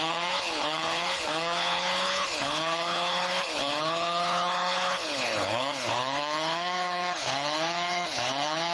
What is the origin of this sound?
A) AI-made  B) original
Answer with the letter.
A